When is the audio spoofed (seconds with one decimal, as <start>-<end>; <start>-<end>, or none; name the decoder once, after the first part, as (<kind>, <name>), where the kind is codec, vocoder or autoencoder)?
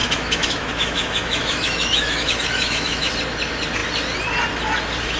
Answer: 0.0-3.1 (autoencoder, DAC-VAE)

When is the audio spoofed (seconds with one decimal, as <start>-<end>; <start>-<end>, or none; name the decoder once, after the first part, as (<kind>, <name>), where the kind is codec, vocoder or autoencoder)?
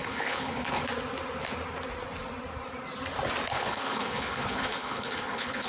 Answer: 0.0-0.8 (codec, HILCodec); 3.5-5.7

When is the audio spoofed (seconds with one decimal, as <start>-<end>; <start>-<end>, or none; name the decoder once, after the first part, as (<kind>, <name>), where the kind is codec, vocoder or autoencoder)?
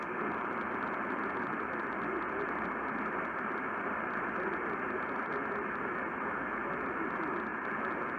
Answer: none